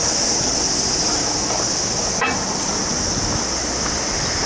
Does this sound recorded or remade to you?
recorded